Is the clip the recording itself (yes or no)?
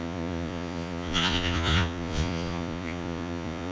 no